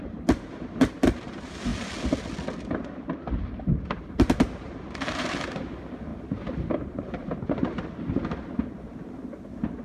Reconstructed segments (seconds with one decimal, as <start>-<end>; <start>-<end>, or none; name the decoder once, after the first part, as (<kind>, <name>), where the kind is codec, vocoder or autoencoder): 0.0-1.7 (vocoder, BigVGAN v2); 4.1-6.1; 6.8-7.2; 9.1-9.8